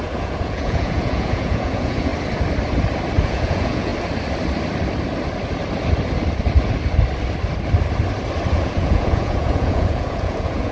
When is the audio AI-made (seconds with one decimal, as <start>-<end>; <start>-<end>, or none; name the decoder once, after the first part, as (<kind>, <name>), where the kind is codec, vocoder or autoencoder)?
0.0-2.1 (vocoder, Vocos); 3.2-3.9; 8.5-10.7